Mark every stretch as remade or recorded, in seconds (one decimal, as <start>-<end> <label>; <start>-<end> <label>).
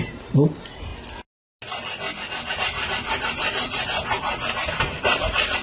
0.0-0.9 remade; 0.9-2.5 recorded; 2.5-5.6 remade